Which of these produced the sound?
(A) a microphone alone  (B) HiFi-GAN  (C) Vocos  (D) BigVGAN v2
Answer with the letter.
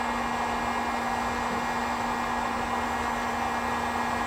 A